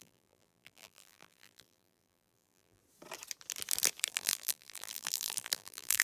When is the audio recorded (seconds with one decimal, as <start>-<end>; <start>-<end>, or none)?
2.8-4.1